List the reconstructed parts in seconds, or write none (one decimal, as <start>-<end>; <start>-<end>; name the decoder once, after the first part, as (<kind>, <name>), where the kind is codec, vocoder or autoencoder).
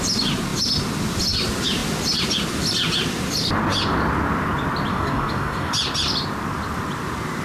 4.9-5.7 (codec, DAC)